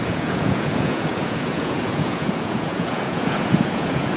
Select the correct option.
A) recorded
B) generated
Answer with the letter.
B